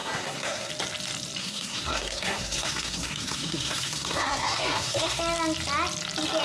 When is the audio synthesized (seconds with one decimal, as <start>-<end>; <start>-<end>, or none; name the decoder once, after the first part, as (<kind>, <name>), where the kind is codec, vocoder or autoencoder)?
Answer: 0.0-0.7 (codec, SNAC); 1.4-5.2

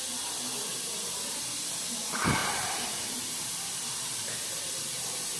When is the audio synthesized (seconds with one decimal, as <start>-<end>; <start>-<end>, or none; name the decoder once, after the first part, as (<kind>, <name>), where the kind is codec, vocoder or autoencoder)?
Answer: 0.7-1.6 (vocoder, BigVGAN v2); 2.4-4.3

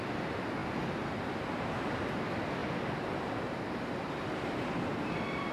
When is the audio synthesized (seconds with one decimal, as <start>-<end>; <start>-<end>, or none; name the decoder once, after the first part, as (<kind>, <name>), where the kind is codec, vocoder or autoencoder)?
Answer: none

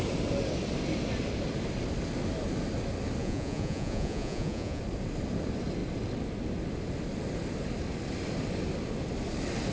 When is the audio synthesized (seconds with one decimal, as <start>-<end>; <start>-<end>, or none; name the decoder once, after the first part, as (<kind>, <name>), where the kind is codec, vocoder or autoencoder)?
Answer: 3.2-4.8 (vocoder, Vocos)